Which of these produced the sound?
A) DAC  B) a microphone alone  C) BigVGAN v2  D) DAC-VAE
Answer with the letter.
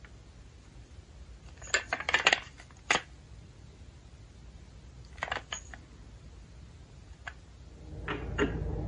B